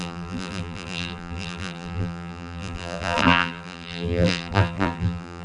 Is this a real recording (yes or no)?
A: no